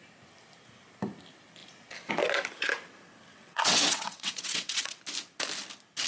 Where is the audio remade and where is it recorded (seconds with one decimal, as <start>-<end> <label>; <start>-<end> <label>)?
0.0-3.3 recorded; 3.3-5.0 remade; 5.0-6.1 recorded

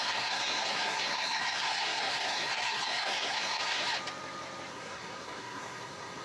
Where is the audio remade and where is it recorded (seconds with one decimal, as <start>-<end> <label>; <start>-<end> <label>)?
0.0-3.8 remade; 3.8-4.7 recorded; 4.7-6.2 remade

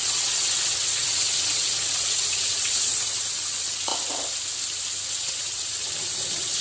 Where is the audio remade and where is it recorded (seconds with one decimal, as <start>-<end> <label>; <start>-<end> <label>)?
0.0-3.9 remade; 3.9-5.1 recorded; 5.1-6.6 remade

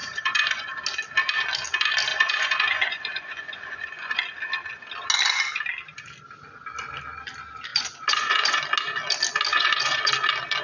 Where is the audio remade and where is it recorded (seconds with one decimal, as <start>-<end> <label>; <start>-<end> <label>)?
0.0-0.7 remade; 0.7-2.1 recorded; 2.1-4.2 remade; 4.2-7.7 recorded; 7.7-8.6 remade; 8.6-9.5 recorded; 9.5-10.1 remade; 10.1-10.6 recorded

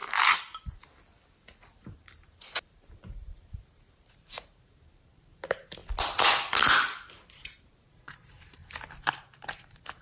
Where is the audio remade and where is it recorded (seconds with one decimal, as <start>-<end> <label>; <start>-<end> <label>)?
0.0-1.8 recorded; 1.8-5.8 remade; 5.8-7.0 recorded; 7.0-8.6 remade; 8.6-9.1 recorded; 9.1-10.0 remade

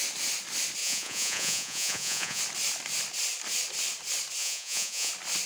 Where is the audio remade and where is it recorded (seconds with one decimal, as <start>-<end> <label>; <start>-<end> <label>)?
0.0-0.8 recorded; 0.8-2.4 remade; 2.4-4.4 recorded; 4.4-5.1 remade; 5.1-5.5 recorded